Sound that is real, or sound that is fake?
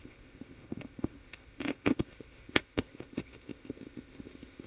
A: fake